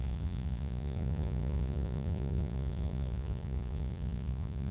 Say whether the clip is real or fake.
fake